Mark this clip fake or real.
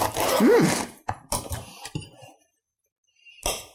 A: fake